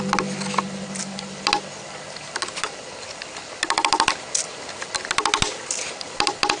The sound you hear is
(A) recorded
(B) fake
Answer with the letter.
A